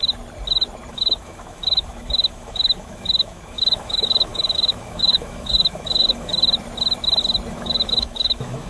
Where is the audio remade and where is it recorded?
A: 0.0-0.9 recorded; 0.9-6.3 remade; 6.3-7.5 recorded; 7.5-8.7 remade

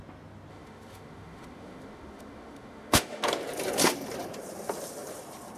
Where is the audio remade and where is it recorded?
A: 0.0-0.5 recorded; 0.5-3.2 remade; 3.2-5.6 recorded

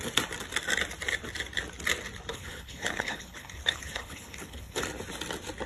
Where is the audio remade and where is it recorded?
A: 0.0-2.3 recorded; 2.3-4.8 remade; 4.8-5.7 recorded

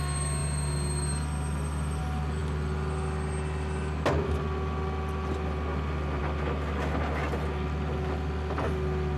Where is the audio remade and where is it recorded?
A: 0.0-9.2 recorded

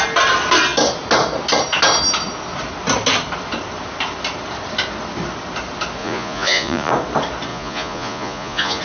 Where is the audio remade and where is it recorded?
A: 0.0-6.0 recorded; 6.0-6.9 remade; 6.9-7.5 recorded; 7.5-8.8 remade

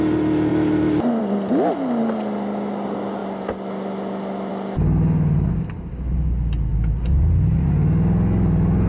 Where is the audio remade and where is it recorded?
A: 0.0-8.9 recorded

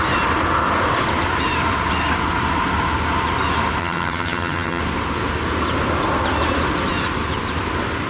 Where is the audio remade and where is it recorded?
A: 0.0-3.8 recorded; 3.8-4.8 remade; 4.8-8.1 recorded

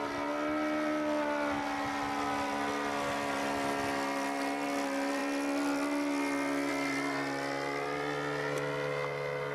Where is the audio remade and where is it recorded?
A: 0.0-9.5 recorded